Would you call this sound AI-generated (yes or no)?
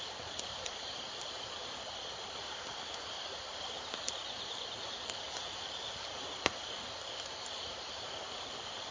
yes